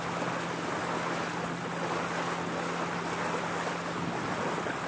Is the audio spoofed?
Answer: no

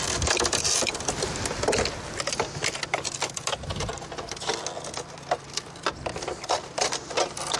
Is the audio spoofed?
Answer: no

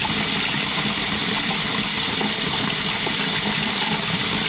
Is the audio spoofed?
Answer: no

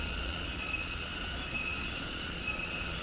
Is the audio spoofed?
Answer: yes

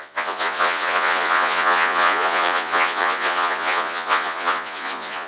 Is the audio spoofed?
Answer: yes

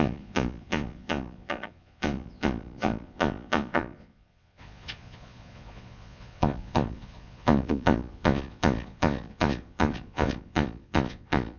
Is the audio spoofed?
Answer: yes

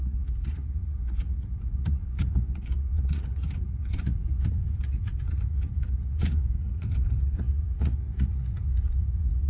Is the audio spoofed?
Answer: yes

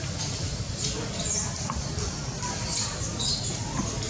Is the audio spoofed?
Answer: no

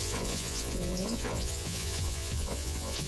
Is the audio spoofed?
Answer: yes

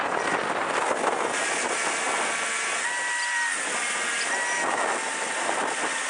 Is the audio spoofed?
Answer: no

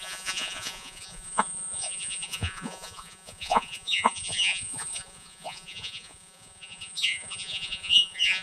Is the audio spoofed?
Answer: yes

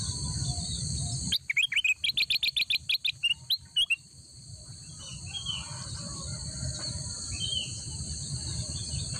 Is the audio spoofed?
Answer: no